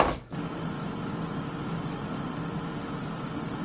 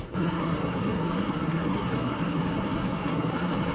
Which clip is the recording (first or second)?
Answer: first